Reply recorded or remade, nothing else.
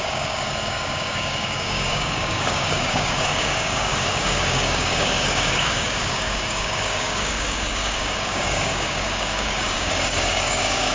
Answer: remade